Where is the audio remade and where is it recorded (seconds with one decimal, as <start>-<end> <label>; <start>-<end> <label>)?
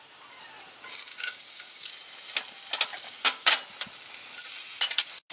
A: 0.0-1.1 recorded; 1.1-1.9 remade; 1.9-2.9 recorded; 2.9-3.5 remade; 3.5-5.3 recorded